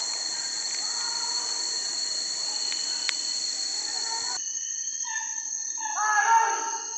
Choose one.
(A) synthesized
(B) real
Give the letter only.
B